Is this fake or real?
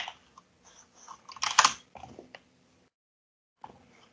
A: real